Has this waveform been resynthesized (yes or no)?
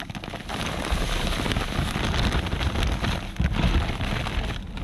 no